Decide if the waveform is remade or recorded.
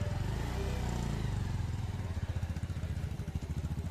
recorded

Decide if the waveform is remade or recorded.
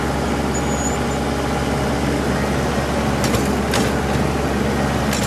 recorded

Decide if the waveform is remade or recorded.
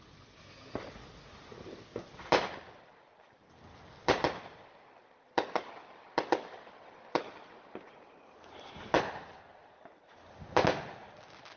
recorded